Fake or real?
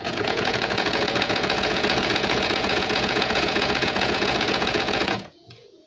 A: fake